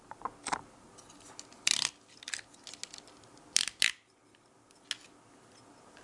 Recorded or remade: recorded